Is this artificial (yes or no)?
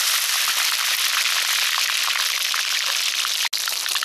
no